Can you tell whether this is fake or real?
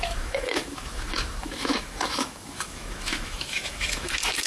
fake